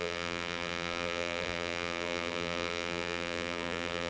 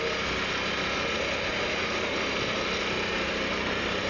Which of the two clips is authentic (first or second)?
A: second